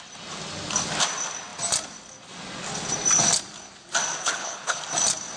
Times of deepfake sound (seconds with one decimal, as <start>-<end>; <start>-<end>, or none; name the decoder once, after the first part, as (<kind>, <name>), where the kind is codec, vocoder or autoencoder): 4.2-4.8 (codec, HILCodec)